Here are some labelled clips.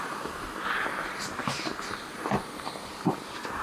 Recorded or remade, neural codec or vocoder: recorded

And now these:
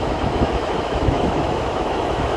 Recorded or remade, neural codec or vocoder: remade, autoencoder, DAC-VAE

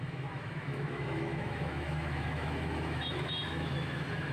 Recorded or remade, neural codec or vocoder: remade, autoencoder, DAC-VAE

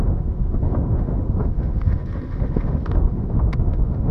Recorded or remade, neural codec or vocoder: remade, autoencoder, DAC-VAE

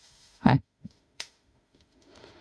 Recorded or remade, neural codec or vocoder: remade, autoencoder, DAC-VAE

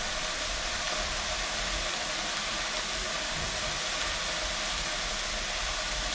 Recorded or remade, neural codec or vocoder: recorded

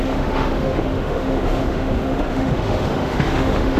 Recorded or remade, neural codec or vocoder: remade, autoencoder, DAC-VAE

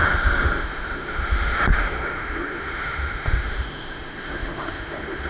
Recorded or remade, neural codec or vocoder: remade, autoencoder, DAC-VAE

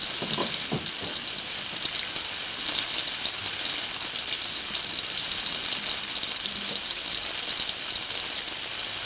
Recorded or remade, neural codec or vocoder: recorded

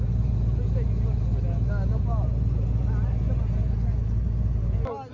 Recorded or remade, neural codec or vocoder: recorded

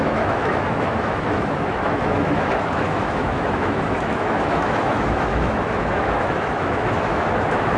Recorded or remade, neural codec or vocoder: remade, autoencoder, DAC-VAE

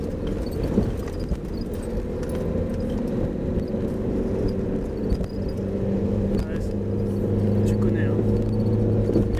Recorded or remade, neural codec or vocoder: recorded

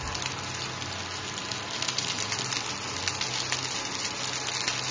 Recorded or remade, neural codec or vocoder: recorded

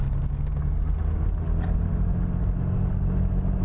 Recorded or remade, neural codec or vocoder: recorded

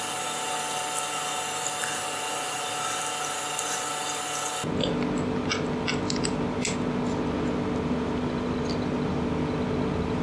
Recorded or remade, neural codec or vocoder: recorded